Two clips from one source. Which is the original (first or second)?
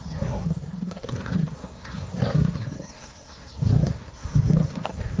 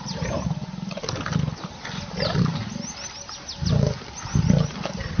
second